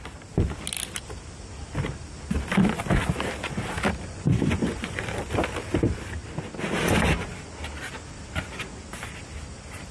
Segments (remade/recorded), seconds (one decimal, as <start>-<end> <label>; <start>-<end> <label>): 0.0-4.0 recorded; 4.0-5.0 remade; 5.0-9.9 recorded